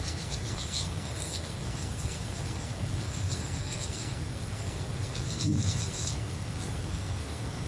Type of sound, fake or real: fake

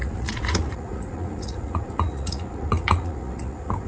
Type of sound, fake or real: fake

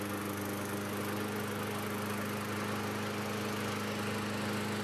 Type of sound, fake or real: real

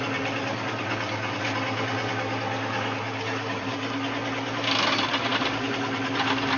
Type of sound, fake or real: real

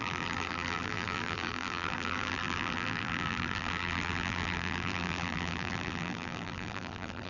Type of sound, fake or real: fake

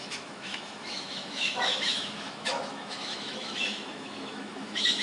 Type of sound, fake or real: fake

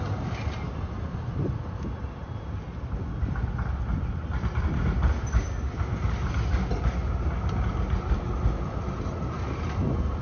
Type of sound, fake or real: real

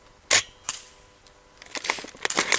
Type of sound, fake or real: real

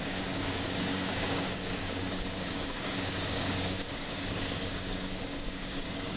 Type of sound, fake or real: fake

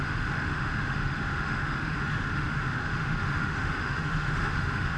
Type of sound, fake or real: fake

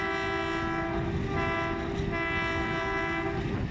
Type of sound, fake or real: real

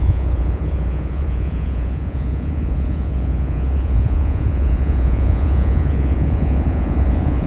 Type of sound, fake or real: fake